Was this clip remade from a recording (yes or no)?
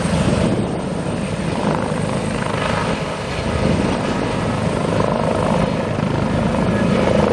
no